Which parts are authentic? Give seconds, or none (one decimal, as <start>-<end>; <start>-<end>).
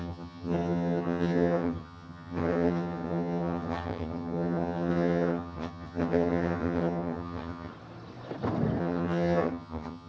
7.7-8.8